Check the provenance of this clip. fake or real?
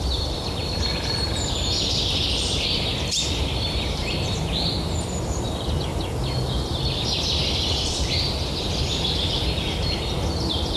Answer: fake